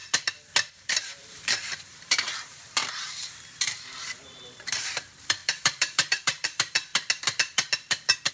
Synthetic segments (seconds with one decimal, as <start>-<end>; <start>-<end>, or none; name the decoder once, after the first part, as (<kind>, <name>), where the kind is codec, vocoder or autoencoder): 0.7-6.9 (vocoder, BigVGAN v2)